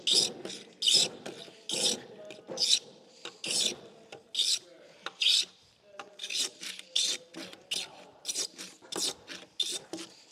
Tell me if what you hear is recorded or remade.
recorded